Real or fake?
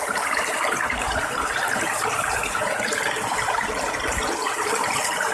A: real